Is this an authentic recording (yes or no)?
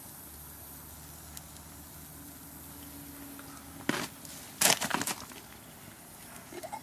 yes